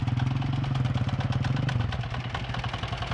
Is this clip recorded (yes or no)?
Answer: yes